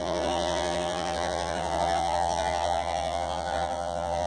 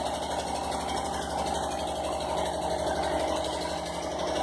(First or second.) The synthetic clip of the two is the first